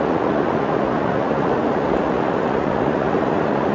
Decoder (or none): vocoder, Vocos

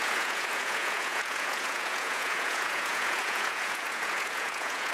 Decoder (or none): vocoder, Vocos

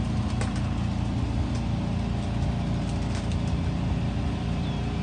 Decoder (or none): none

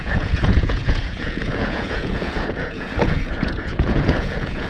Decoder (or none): vocoder, Vocos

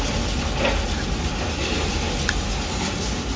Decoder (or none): none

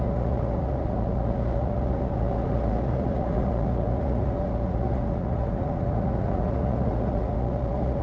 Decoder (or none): vocoder, Vocos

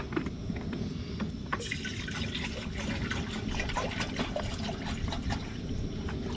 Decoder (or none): none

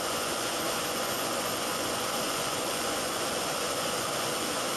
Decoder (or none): vocoder, Vocos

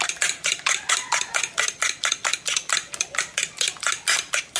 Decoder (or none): none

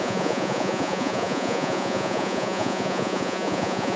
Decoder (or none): vocoder, Vocos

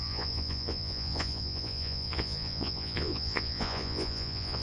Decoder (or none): vocoder, Vocos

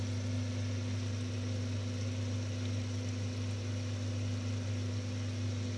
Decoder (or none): none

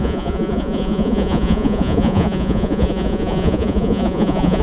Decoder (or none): vocoder, Vocos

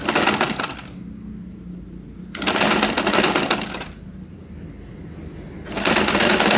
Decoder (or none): none